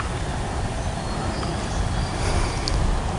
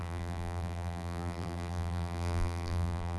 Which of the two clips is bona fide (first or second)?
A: first